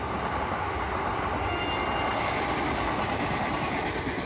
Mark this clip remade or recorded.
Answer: recorded